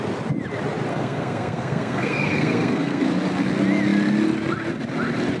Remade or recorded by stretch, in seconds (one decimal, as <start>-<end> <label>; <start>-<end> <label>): 0.0-0.9 recorded; 0.9-3.0 remade; 3.0-5.4 recorded